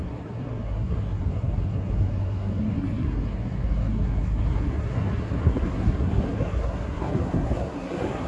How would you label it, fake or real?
fake